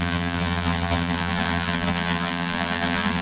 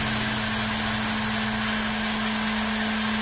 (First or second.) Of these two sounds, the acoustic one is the second